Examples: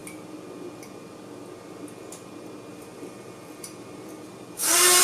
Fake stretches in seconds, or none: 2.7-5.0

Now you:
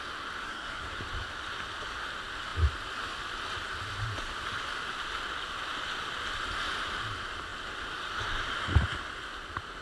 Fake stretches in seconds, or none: 0.4-1.0

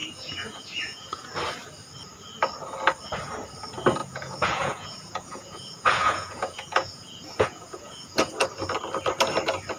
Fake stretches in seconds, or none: 0.0-1.3; 4.0-8.4

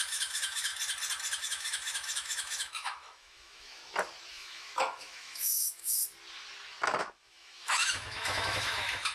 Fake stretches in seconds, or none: 0.0-0.7; 1.4-3.8; 4.3-6.0; 7.0-9.1

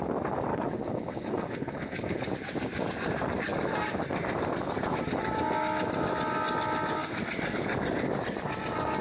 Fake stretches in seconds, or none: 0.5-2.3

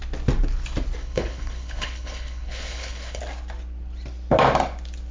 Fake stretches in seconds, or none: 1.0-3.2